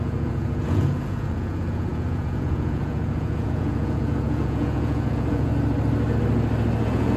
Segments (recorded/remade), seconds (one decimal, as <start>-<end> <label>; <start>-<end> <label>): 0.0-5.5 remade; 5.5-6.8 recorded; 6.8-7.2 remade